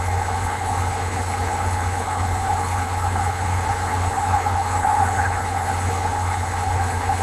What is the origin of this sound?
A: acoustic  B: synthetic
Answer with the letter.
B